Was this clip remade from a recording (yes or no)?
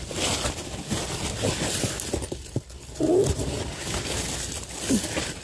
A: no